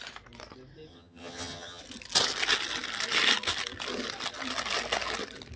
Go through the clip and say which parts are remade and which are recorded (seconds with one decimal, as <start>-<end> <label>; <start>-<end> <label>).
0.0-0.9 recorded; 0.9-1.8 remade; 1.8-5.6 recorded